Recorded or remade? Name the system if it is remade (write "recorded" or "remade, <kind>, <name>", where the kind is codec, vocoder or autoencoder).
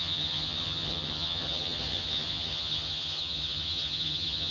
remade, vocoder, HiFi-GAN